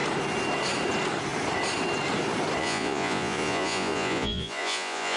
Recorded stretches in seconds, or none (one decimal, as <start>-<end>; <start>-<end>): 0.0-2.6